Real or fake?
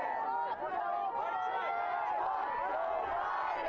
real